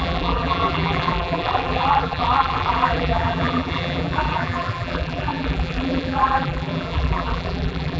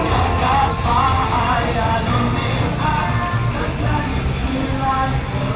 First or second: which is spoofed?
first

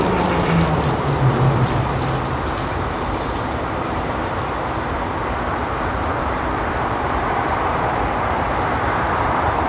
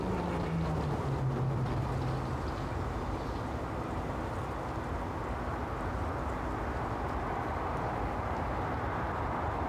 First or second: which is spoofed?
first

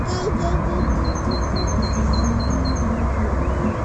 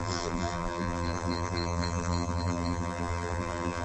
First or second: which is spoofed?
second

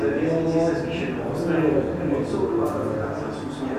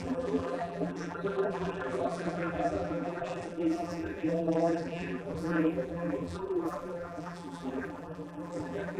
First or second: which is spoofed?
second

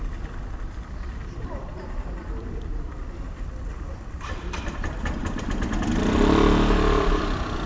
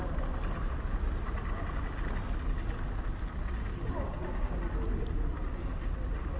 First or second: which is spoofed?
first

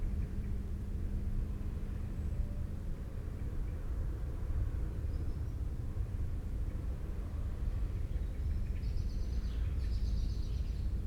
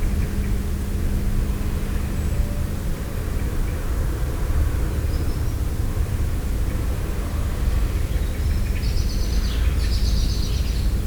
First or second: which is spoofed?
first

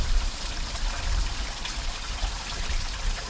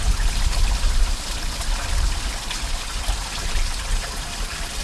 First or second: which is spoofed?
first